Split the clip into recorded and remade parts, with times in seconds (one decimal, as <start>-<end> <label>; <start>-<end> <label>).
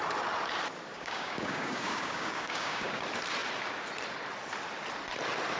0.0-0.9 recorded; 0.9-3.0 remade; 3.0-5.6 recorded